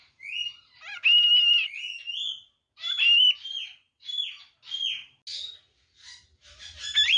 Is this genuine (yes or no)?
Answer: yes